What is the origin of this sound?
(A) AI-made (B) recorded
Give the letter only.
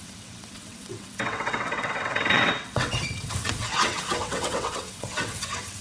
A